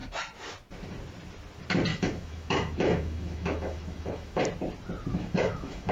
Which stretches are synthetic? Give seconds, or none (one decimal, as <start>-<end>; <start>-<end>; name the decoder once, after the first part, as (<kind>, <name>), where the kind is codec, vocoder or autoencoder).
1.9-4.4 (autoencoder, DAC-VAE); 5.1-5.9